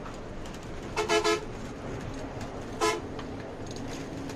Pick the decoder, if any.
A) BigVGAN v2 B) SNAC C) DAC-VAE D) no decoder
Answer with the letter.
D